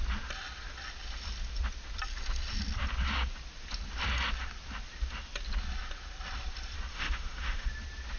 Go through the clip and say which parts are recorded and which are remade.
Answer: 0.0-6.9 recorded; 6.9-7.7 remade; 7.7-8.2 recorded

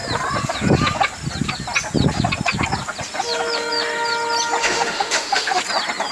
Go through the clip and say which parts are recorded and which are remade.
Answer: 0.0-4.6 recorded; 4.6-5.6 remade; 5.6-6.1 recorded

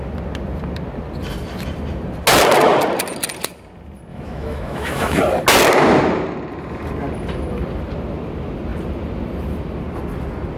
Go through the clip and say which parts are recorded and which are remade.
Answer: 0.0-4.1 recorded; 4.1-5.2 remade; 5.2-10.6 recorded

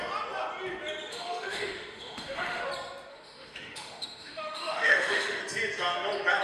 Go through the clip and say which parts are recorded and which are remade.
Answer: 0.0-1.1 recorded; 1.1-2.7 remade; 2.7-3.1 recorded; 3.1-5.4 remade; 5.4-6.4 recorded

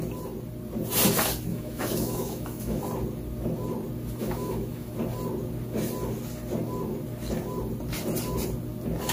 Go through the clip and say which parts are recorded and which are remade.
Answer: 0.0-1.5 recorded; 1.5-2.8 remade; 2.8-4.2 recorded; 4.2-4.9 remade; 4.9-9.1 recorded

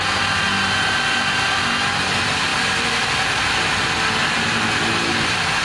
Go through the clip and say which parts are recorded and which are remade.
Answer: 0.0-5.6 recorded

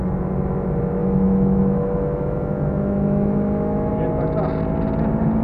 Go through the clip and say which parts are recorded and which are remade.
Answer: 0.0-1.0 recorded; 1.0-3.9 remade; 3.9-5.4 recorded

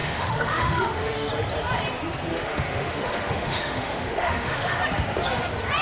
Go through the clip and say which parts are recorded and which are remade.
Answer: 0.0-1.3 remade; 1.3-2.3 recorded; 2.3-4.8 remade; 4.8-5.8 recorded